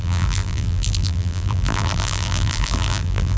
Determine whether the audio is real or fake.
fake